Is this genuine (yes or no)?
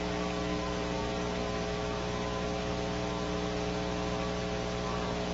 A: yes